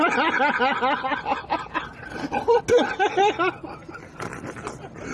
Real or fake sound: real